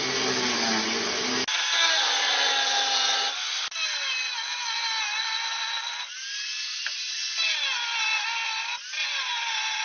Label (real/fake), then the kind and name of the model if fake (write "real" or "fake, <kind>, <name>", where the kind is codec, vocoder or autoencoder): real